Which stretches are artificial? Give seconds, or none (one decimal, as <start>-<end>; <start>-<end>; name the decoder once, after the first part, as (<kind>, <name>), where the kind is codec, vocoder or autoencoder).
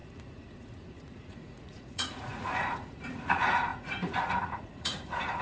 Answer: 0.0-5.4 (vocoder, Vocos)